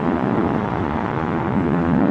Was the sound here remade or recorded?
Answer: remade